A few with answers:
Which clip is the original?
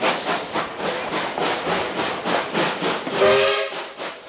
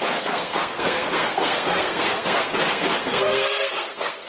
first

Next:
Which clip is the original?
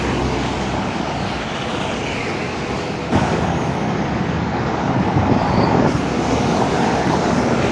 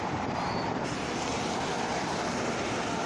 second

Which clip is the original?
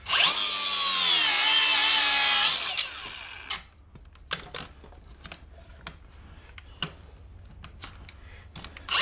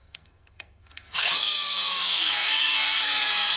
first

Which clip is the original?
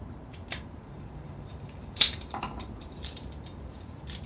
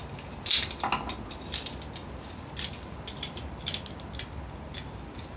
second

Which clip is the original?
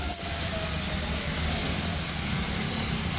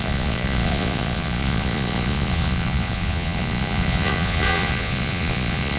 first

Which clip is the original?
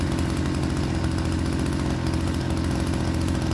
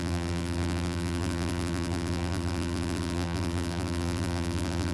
first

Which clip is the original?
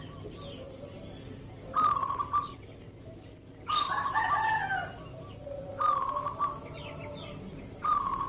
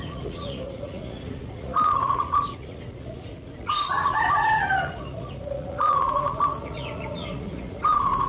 first